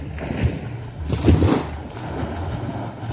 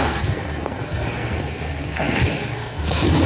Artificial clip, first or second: second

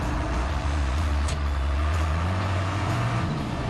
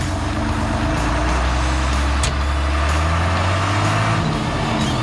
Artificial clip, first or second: first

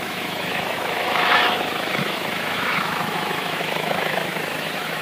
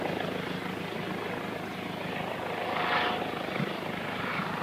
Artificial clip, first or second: first